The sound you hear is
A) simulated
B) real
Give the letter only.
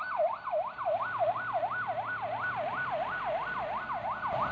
B